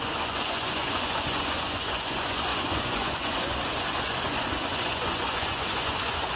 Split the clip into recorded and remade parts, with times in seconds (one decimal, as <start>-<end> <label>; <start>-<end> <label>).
0.0-6.4 remade